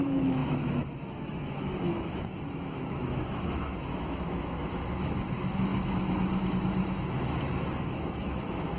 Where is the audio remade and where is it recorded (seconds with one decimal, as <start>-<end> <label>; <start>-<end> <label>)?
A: 0.0-8.8 remade